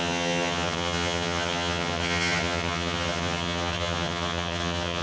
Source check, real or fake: fake